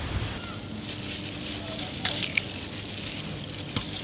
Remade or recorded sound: recorded